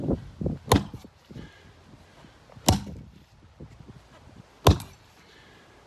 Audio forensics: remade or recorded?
recorded